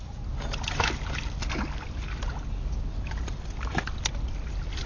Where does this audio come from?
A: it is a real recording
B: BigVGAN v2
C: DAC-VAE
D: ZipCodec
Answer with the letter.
A